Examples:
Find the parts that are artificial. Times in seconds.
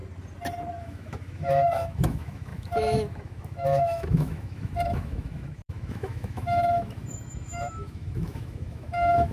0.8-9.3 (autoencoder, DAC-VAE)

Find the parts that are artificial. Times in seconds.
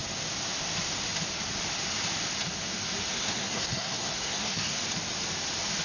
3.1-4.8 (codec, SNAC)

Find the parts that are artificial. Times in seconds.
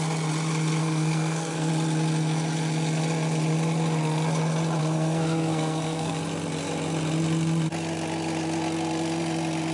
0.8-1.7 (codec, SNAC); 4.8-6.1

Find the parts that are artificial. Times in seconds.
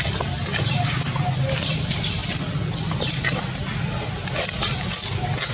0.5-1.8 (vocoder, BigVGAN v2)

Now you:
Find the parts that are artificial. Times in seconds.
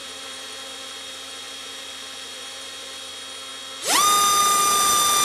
0.0-3.1 (vocoder, BigVGAN v2)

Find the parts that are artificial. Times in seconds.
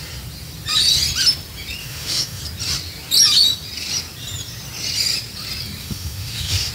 1.8-2.4 (autoencoder, DAC-VAE); 5.8-6.7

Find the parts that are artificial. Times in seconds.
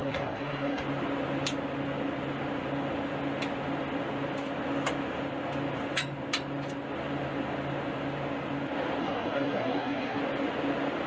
0.0-0.8 (codec, SNAC); 9.0-10.2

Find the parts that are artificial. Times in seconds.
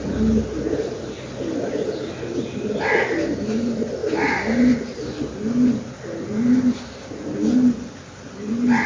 none